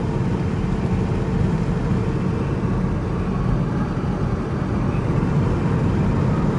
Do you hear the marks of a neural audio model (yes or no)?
no